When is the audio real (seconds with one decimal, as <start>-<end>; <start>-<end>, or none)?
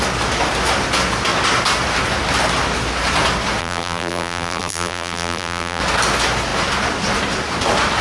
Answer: 0.0-3.6; 5.8-8.0